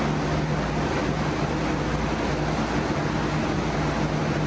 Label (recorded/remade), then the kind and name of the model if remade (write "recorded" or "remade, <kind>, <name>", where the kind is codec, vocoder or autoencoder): recorded